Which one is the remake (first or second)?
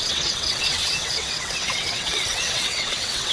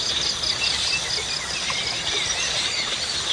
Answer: first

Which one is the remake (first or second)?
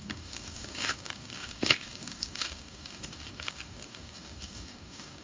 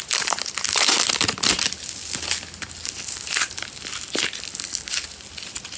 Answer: first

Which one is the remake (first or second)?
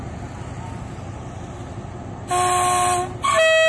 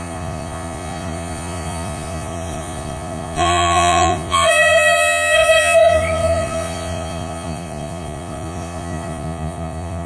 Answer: second